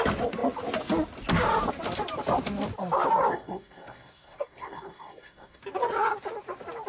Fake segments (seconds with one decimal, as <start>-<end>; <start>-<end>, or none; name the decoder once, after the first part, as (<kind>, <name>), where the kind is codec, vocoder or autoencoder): 3.3-5.6 (codec, SNAC)